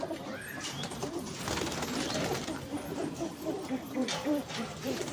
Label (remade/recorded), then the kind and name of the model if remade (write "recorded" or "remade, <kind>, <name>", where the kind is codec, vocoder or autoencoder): remade, vocoder, BigVGAN v2